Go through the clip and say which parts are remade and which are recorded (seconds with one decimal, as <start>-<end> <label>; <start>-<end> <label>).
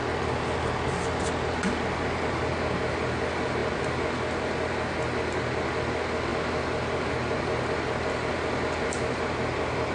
0.0-9.9 recorded